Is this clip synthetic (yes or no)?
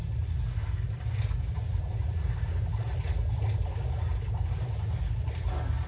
no